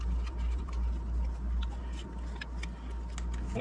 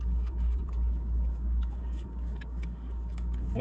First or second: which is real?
first